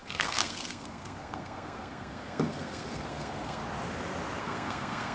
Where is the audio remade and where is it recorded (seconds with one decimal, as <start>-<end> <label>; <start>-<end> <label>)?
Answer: 0.0-3.6 remade; 3.6-4.4 recorded; 4.4-5.1 remade